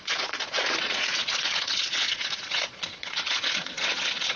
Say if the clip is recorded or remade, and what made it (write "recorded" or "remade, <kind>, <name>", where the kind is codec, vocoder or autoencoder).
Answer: remade, vocoder, Vocos